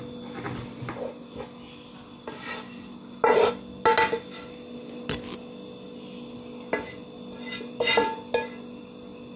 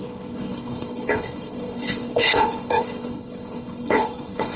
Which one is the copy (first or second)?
second